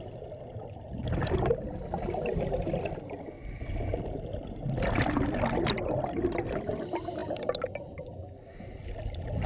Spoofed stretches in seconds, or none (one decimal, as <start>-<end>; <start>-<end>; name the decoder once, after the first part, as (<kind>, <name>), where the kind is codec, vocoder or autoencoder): none